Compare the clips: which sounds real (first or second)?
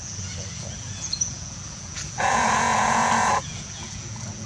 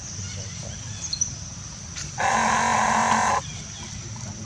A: second